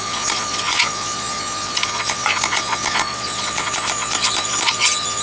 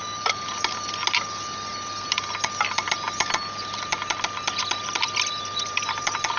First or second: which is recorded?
second